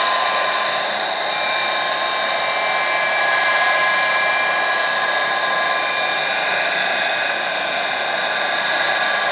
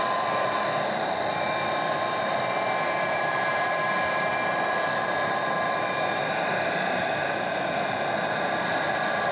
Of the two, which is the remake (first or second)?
second